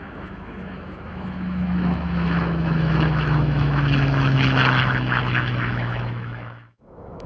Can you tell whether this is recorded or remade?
remade